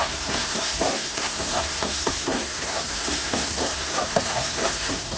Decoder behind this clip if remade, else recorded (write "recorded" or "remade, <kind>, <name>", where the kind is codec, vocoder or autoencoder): remade, codec, SNAC